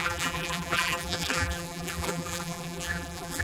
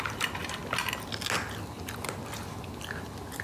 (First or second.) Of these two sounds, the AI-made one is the first